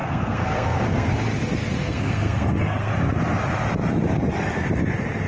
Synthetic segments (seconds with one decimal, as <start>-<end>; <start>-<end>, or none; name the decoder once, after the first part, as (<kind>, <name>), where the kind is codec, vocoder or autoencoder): 0.0-1.1 (codec, SNAC); 1.8-2.9